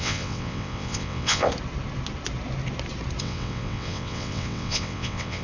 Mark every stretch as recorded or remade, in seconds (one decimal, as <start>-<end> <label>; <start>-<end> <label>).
0.0-1.5 remade; 1.5-3.2 recorded; 3.2-5.4 remade